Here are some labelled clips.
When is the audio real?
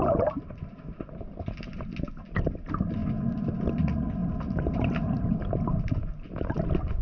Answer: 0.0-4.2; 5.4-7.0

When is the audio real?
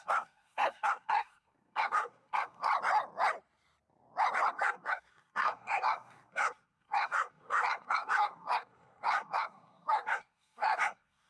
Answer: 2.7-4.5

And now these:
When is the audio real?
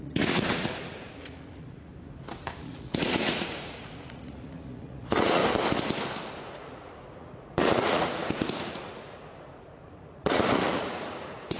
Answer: 1.9-2.6; 5.4-6.4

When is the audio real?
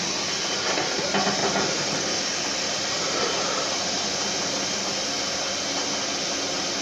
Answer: 0.0-6.8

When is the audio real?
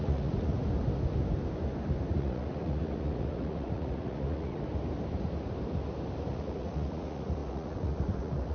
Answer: 0.6-2.1; 4.7-6.3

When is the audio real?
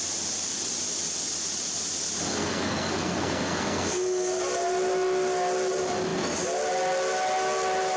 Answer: 0.0-2.3; 4.3-8.0